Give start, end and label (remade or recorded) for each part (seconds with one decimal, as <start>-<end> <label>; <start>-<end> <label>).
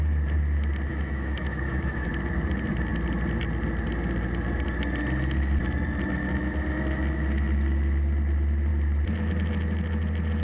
0.0-0.9 recorded; 0.9-2.1 remade; 2.1-10.4 recorded